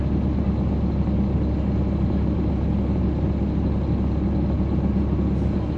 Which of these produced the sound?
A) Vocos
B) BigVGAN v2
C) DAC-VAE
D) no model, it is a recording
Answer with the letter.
D